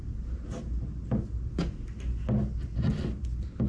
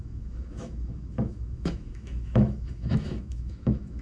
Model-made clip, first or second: second